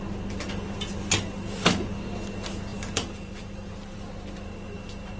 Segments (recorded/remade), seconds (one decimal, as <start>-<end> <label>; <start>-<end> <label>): 0.0-2.7 recorded; 2.7-3.4 remade; 3.4-5.2 recorded

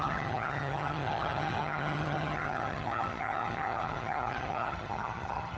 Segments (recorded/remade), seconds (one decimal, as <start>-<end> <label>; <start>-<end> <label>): 0.0-5.6 remade